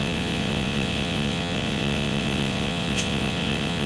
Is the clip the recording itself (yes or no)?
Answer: no